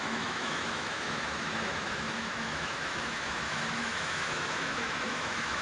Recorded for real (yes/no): no